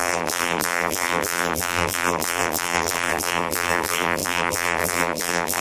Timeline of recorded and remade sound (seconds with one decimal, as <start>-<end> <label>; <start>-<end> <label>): 0.0-5.6 remade